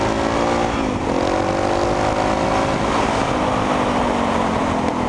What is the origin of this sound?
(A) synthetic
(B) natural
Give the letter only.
B